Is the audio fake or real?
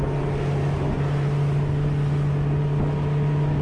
real